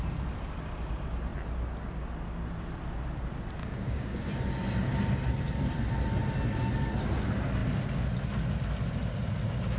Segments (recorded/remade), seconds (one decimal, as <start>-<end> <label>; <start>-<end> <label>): 0.0-3.6 recorded; 3.6-4.3 remade; 4.3-9.8 recorded